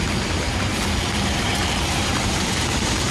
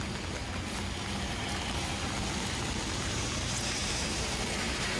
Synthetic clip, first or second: first